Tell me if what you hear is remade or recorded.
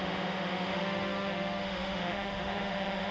remade